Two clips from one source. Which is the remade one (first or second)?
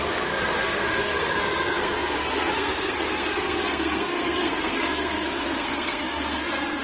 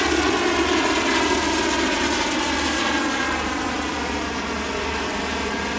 first